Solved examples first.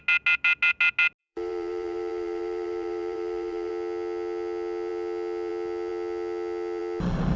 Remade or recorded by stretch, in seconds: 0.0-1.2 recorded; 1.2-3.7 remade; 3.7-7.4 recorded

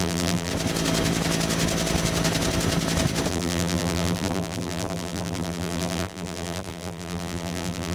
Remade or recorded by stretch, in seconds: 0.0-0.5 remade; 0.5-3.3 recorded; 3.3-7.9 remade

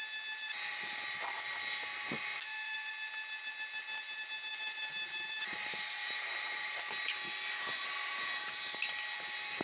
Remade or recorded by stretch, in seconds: 0.0-2.1 recorded; 2.1-2.9 remade; 2.9-4.5 recorded; 4.5-6.8 remade; 6.8-9.6 recorded

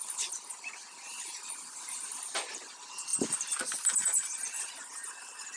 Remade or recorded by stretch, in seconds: 0.0-5.6 recorded

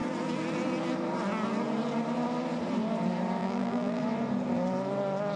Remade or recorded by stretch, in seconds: 0.0-3.4 recorded; 3.4-4.0 remade; 4.0-5.4 recorded

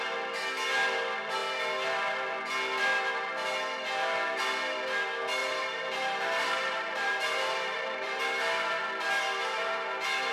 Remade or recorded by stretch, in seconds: 0.0-5.4 recorded; 5.4-8.2 remade; 8.2-10.3 recorded

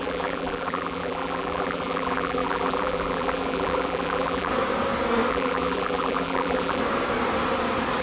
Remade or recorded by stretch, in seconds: 0.0-4.5 remade; 4.5-5.3 recorded; 5.3-6.8 remade; 6.8-8.0 recorded

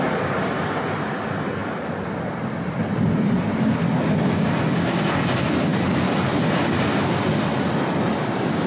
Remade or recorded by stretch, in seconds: 0.0-8.7 recorded